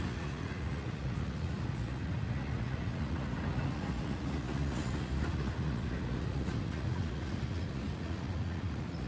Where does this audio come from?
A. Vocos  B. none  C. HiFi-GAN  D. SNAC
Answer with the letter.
A